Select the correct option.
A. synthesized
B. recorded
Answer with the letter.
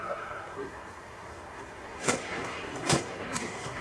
A